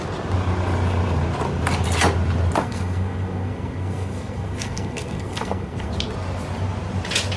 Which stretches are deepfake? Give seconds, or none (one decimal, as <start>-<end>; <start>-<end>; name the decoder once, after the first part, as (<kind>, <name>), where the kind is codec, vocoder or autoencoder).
2.6-5.9 (codec, SNAC)